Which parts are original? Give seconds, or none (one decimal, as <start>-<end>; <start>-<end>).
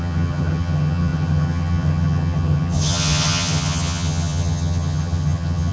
none